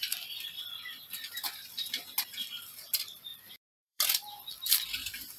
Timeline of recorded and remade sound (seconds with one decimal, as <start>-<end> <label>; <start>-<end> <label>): 0.0-3.3 recorded; 3.3-4.5 remade; 4.5-5.4 recorded